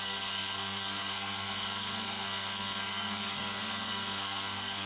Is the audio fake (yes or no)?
yes